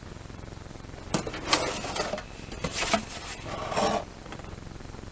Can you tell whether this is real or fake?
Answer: real